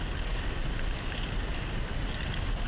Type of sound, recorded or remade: recorded